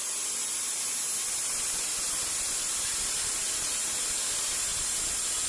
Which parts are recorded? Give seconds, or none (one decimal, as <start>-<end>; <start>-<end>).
0.0-5.5